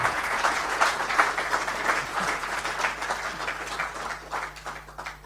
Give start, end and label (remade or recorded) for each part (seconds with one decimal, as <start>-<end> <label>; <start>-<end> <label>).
0.0-1.3 remade; 1.3-2.1 recorded; 2.1-2.6 remade; 2.6-5.3 recorded